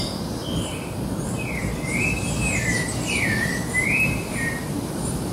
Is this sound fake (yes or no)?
yes